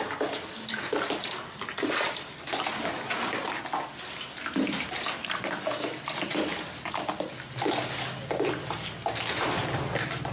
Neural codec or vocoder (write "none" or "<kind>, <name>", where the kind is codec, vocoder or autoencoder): none